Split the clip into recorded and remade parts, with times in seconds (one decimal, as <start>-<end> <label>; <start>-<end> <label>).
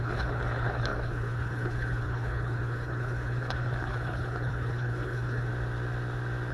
0.0-5.5 remade; 5.5-6.5 recorded